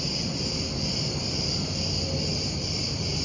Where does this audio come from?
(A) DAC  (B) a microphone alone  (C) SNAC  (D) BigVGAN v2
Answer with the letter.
D